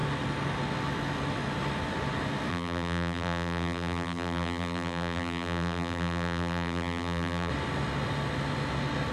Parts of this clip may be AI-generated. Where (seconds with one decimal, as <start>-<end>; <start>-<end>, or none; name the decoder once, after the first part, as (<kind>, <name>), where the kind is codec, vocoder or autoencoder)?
2.5-7.5 (vocoder, BigVGAN v2)